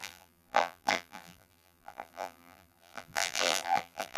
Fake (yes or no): yes